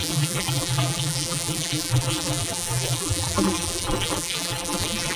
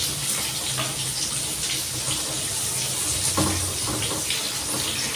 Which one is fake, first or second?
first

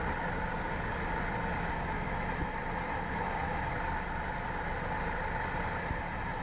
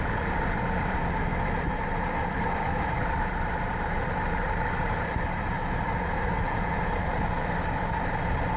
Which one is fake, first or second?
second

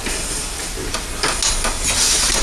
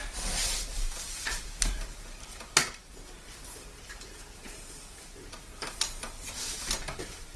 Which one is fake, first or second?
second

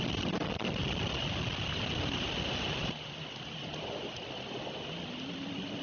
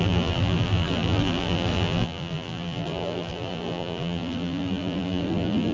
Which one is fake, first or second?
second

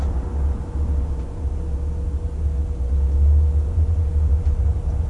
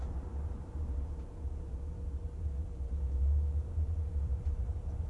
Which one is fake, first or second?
second